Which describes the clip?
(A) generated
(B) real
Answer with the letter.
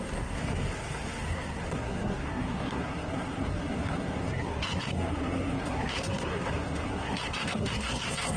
A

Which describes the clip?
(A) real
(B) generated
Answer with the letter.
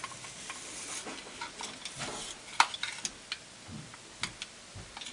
A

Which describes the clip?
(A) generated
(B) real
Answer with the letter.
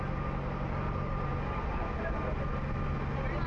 B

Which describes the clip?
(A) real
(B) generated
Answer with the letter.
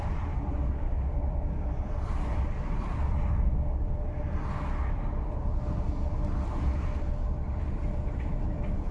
A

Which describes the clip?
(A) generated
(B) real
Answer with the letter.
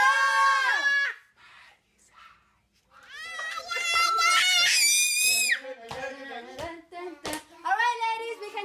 B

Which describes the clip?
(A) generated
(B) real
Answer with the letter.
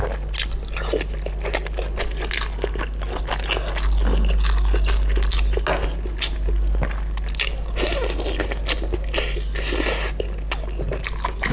B